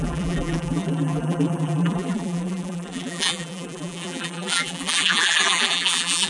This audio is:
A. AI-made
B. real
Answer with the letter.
A